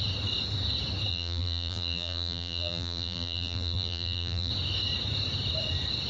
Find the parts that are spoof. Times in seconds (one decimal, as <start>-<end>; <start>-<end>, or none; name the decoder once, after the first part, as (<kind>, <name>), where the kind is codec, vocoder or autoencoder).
1.1-4.5 (vocoder, BigVGAN v2)